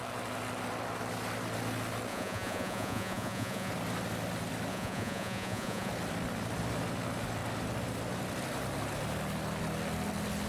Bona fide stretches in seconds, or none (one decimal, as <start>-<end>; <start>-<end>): 0.0-2.1; 3.7-4.7; 5.9-10.5